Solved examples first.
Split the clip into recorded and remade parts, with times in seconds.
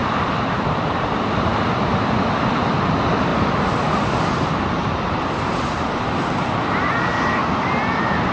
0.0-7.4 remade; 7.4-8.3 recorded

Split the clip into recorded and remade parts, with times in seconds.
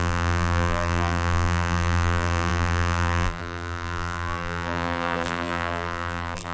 0.0-6.5 remade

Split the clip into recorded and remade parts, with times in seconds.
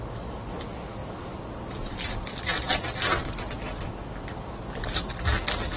0.0-1.0 recorded; 1.0-4.5 remade; 4.5-5.8 recorded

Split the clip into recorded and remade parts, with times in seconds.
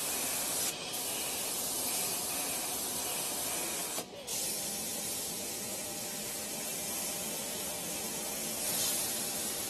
0.0-4.3 recorded; 4.3-5.6 remade; 5.6-6.7 recorded; 6.7-8.1 remade; 8.1-9.7 recorded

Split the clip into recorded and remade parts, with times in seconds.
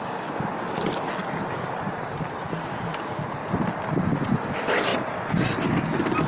0.0-1.2 recorded; 1.2-2.0 remade; 2.0-4.9 recorded; 4.9-5.7 remade; 5.7-6.3 recorded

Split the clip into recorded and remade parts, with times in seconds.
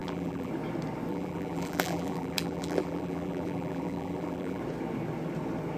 0.0-0.5 remade; 0.5-1.1 recorded; 1.1-4.6 remade; 4.6-5.8 recorded